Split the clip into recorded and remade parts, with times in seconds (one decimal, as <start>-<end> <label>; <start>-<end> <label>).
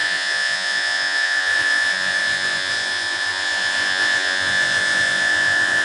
0.0-5.8 remade